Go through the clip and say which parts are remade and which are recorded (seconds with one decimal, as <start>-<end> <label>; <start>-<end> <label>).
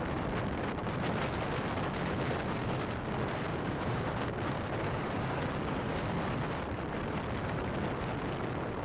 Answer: 0.0-3.5 recorded; 3.5-4.3 remade; 4.3-4.8 recorded; 4.8-6.1 remade; 6.1-8.8 recorded